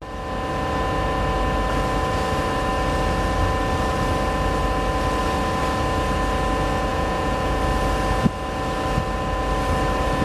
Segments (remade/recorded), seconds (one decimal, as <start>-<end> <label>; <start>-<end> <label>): 0.0-6.9 recorded; 6.9-7.6 remade; 7.6-10.2 recorded